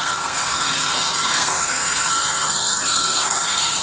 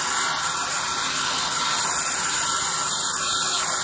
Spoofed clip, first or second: first